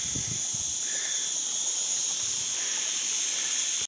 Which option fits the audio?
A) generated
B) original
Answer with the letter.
B